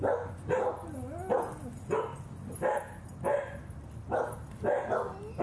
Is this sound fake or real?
real